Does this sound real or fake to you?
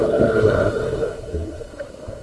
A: fake